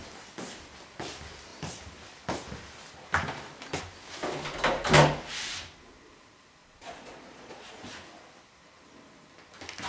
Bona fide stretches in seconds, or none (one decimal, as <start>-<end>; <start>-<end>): 0.0-6.6; 7.9-9.9